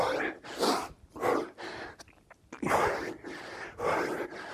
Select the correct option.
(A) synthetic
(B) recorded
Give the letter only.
B